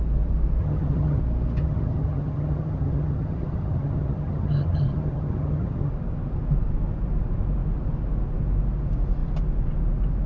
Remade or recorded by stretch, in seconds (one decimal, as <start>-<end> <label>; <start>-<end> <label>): 0.0-0.6 recorded; 0.6-1.2 remade; 1.2-1.6 recorded; 1.6-5.9 remade; 5.9-10.3 recorded